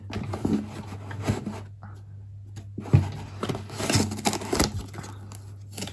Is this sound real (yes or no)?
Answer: yes